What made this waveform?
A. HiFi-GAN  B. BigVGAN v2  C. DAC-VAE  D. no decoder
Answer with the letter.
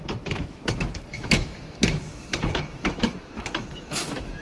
C